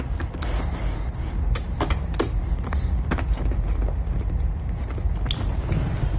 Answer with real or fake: real